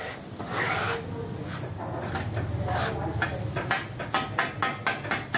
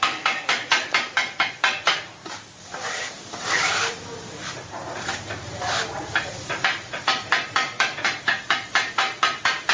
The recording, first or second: first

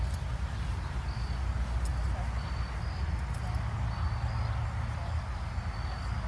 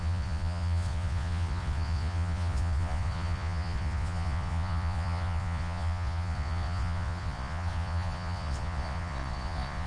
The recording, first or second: first